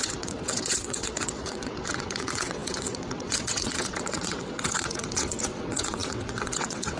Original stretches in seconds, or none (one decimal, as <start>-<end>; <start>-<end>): none